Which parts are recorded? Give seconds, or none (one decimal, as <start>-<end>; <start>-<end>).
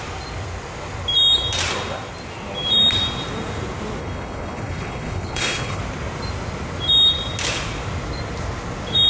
0.0-4.0; 5.8-9.1